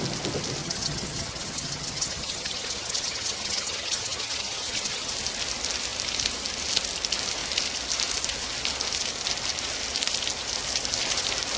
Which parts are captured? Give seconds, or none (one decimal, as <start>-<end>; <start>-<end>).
0.0-0.6; 5.1-11.6